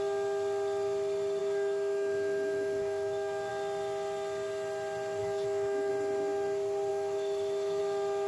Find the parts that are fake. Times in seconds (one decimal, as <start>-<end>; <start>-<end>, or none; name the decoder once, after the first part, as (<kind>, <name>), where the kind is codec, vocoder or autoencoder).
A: 1.4-3.5 (autoencoder, DAC-VAE); 5.2-5.9; 6.9-7.8